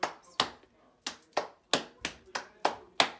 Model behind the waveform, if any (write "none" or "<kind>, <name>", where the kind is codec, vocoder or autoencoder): none